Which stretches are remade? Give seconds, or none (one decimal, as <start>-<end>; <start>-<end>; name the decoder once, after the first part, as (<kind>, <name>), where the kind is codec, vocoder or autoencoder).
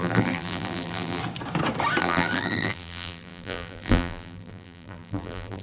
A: 0.0-1.2 (vocoder, BigVGAN v2); 2.0-5.6